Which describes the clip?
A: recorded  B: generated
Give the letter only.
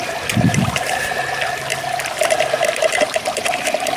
A